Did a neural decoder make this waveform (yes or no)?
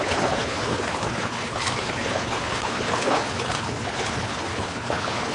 yes